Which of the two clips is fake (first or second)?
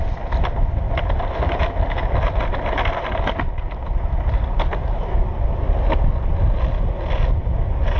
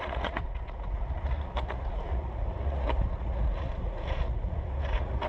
second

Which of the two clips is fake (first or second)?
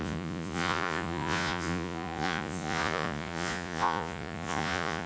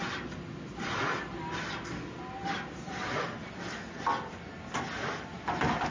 first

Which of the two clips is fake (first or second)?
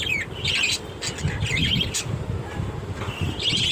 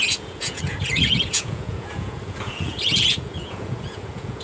second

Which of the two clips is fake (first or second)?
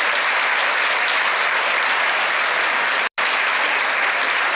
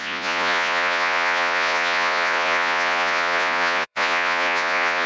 second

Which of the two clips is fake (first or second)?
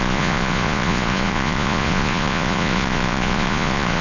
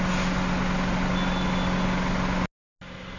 first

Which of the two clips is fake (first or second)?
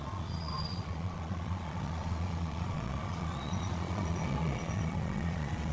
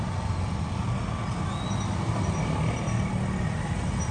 first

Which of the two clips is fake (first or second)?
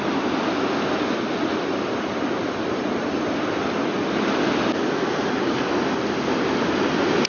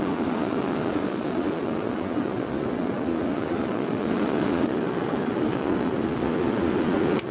second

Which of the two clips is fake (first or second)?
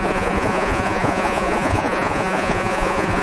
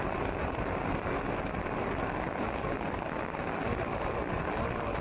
first